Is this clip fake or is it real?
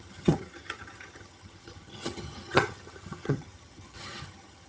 fake